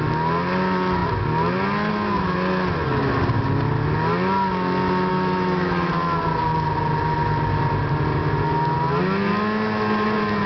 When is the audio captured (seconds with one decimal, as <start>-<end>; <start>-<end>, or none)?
0.0-5.1; 5.9-10.5